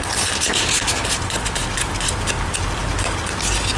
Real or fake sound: real